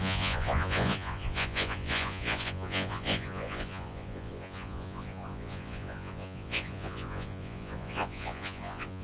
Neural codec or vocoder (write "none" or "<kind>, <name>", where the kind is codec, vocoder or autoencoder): vocoder, Vocos